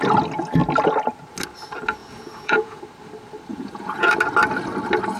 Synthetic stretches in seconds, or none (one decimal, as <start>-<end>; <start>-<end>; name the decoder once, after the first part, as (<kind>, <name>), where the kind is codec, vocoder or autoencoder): 2.0-2.8 (vocoder, Vocos); 3.5-4.1